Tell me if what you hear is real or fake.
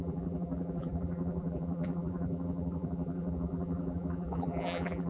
fake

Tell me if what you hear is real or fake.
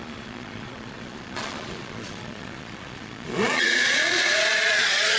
fake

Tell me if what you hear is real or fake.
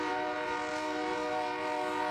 fake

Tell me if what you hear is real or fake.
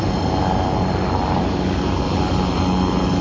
fake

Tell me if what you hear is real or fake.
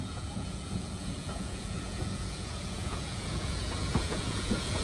fake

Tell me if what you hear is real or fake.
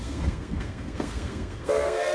fake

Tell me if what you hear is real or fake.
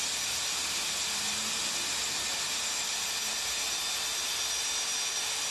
real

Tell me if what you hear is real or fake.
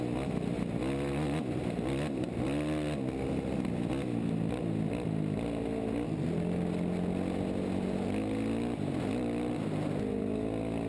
real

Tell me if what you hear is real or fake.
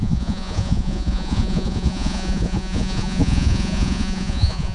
fake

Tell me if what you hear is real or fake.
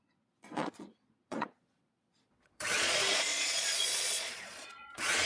fake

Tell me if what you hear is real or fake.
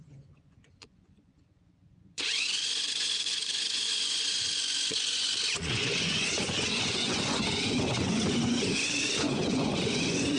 fake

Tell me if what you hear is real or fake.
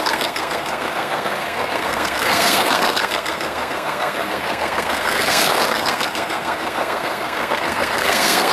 fake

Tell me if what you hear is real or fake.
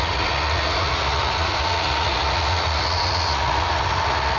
fake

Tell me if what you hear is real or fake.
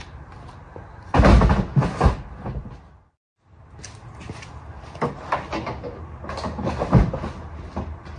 real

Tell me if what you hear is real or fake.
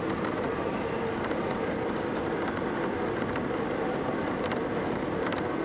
real